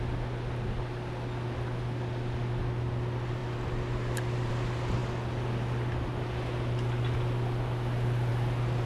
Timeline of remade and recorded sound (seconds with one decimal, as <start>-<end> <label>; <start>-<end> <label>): 0.0-8.9 recorded

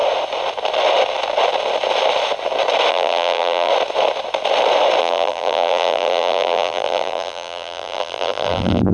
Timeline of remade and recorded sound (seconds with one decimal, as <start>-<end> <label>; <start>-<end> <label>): 0.0-2.9 recorded; 2.9-3.7 remade; 3.7-5.0 recorded; 5.0-8.9 remade

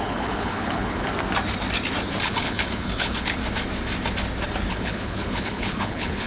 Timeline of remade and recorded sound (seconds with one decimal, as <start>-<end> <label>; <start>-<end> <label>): 0.0-1.1 remade; 1.1-2.4 recorded; 2.4-3.4 remade; 3.4-4.7 recorded; 4.7-6.3 remade

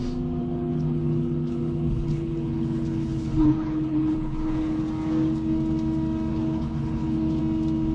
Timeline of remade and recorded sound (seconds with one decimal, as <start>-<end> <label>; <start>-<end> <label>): 0.0-0.4 recorded; 0.4-4.8 remade; 4.8-6.3 recorded; 6.3-7.4 remade; 7.4-7.9 recorded

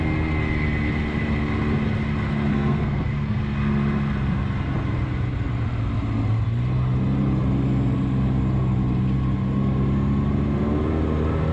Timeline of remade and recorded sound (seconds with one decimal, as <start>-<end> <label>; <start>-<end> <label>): 0.0-2.5 recorded; 2.5-3.4 remade; 3.4-11.5 recorded

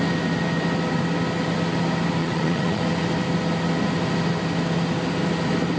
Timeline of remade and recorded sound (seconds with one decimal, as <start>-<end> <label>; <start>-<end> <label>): 0.0-2.2 recorded; 2.2-2.8 remade; 2.8-5.8 recorded

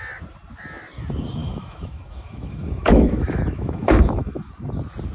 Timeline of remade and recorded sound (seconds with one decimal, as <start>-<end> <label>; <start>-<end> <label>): 0.0-1.4 recorded; 1.4-4.5 remade; 4.5-5.1 recorded